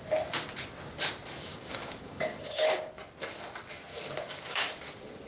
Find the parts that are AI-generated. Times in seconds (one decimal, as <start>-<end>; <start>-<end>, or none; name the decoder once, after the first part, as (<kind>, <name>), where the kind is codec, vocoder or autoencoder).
1.5-2.8 (codec, DAC); 3.9-4.7